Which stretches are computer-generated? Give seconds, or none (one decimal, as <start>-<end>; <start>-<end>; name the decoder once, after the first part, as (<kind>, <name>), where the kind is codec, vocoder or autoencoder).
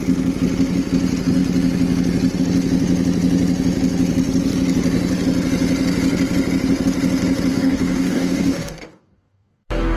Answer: 7.5-10.0 (codec, DAC)